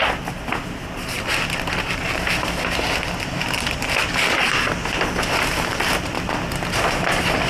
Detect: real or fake real